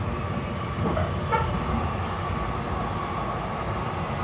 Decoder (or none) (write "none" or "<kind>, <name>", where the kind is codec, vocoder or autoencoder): none